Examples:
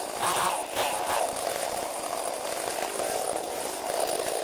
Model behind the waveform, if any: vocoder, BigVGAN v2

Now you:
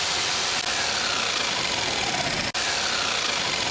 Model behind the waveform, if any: none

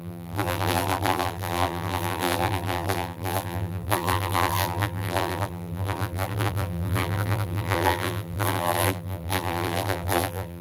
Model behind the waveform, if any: vocoder, BigVGAN v2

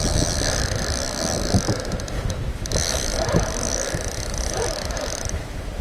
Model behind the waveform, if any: none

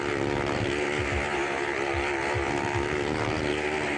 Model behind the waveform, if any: none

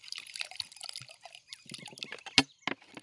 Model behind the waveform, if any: none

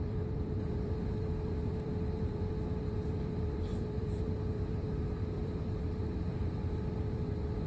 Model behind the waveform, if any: vocoder, BigVGAN v2